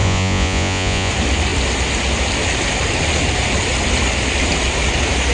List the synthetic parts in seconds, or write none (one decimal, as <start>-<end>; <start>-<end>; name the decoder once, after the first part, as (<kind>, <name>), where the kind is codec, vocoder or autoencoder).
0.0-1.1 (vocoder, Vocos)